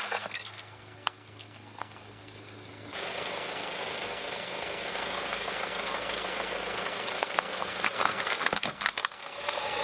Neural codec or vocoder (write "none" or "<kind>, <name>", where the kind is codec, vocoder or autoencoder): codec, SNAC